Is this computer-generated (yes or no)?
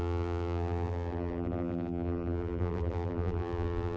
yes